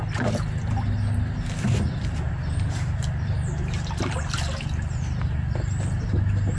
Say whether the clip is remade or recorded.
recorded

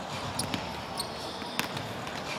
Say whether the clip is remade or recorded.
recorded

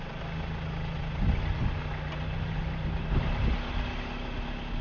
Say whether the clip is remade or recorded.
recorded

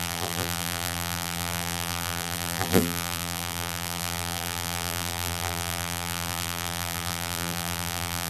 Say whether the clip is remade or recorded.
remade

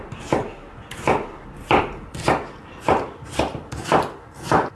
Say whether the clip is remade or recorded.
remade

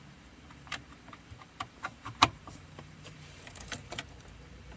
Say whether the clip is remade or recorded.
remade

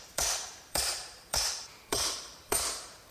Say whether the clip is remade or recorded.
remade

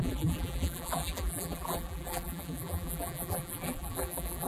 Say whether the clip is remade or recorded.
remade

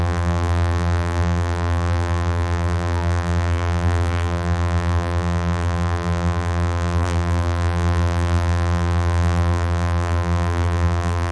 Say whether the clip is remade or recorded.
remade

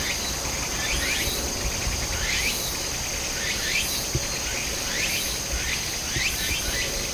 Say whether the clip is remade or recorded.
recorded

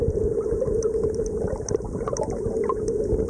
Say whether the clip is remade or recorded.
remade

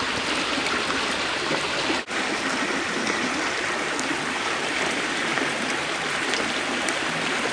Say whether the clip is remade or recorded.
recorded